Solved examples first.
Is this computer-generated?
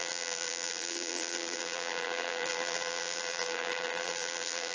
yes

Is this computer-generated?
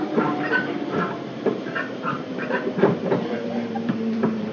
yes